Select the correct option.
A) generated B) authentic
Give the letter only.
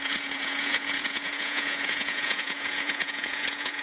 A